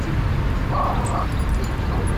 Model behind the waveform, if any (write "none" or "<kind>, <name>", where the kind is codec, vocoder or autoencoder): none